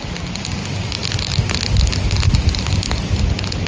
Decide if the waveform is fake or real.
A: real